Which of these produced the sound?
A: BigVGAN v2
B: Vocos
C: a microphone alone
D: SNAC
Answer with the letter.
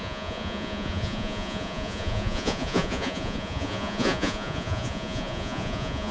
B